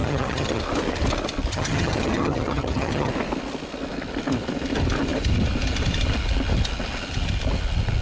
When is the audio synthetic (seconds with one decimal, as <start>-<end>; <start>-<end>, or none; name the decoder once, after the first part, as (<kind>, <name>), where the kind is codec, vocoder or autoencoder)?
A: 0.0-0.6 (vocoder, HiFi-GAN); 1.5-3.1